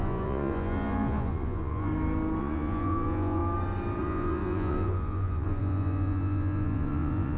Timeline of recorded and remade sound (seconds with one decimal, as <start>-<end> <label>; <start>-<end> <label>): 0.0-1.9 remade; 1.9-2.4 recorded; 2.4-3.4 remade; 3.4-4.0 recorded; 4.0-7.4 remade